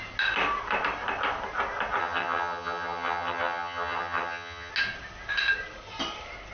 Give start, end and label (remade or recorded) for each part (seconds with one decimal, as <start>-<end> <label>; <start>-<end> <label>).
0.0-2.0 recorded; 2.0-4.7 remade; 4.7-6.5 recorded

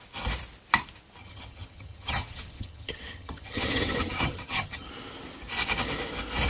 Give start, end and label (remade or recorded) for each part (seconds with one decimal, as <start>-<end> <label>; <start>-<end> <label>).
0.0-1.2 recorded; 1.2-4.9 remade; 4.9-6.5 recorded